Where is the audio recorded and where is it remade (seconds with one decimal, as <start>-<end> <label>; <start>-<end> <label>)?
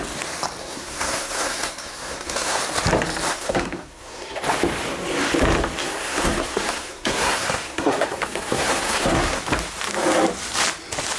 0.0-0.6 recorded; 0.6-2.6 remade; 2.6-3.3 recorded; 3.3-4.4 remade; 4.4-5.8 recorded; 5.8-9.4 remade; 9.4-11.2 recorded